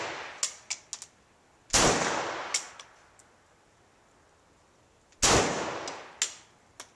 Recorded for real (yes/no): yes